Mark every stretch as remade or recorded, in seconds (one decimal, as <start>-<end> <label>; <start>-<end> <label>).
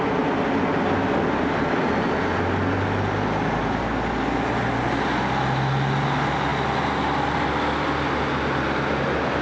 0.0-9.4 recorded